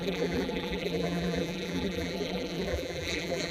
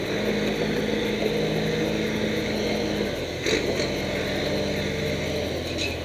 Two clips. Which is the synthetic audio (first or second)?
first